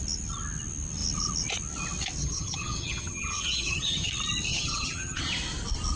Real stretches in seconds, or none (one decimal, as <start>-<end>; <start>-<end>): 0.0-2.2; 4.1-4.5; 5.2-6.0

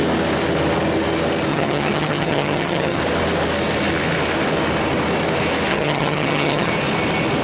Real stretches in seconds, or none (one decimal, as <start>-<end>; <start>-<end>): 0.0-1.5; 3.0-5.7; 6.7-7.4